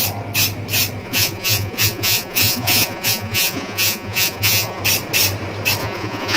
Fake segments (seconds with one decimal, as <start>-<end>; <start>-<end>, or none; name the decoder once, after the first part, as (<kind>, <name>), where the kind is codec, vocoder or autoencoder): 1.0-4.8 (vocoder, Vocos); 5.8-6.4